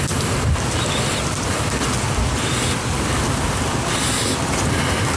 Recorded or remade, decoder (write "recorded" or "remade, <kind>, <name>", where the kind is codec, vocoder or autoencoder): remade, vocoder, BigVGAN v2